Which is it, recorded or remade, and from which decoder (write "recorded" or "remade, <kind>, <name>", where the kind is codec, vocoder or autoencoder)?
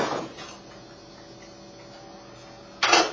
recorded